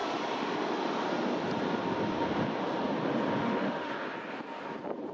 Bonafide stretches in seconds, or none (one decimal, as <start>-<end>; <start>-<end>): 0.0-3.4; 3.9-5.1